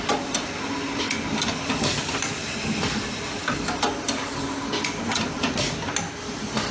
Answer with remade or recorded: recorded